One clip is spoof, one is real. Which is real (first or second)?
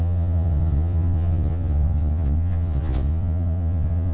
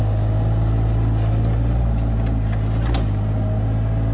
second